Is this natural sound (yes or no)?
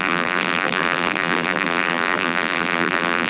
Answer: no